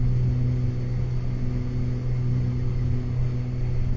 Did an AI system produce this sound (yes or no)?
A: no